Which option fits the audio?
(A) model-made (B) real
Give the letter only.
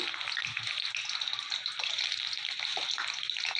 B